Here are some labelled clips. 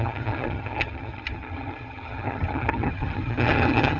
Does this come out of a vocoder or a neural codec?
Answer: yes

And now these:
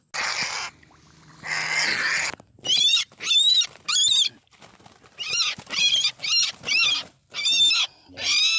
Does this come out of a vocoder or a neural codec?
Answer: no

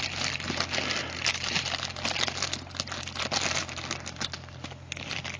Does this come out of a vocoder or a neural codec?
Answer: no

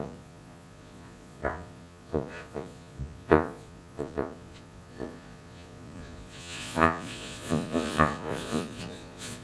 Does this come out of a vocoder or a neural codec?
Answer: yes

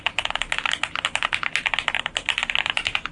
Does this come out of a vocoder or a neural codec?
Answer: no